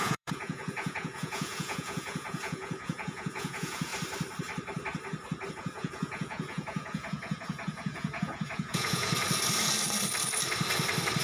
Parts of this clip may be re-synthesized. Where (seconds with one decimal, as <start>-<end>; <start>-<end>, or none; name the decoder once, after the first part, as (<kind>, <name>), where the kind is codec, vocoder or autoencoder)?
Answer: 0.0-3.9 (vocoder, Vocos); 5.5-9.1